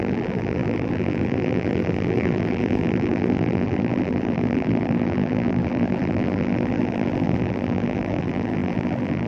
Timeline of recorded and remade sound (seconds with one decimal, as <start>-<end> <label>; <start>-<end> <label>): 0.0-9.3 remade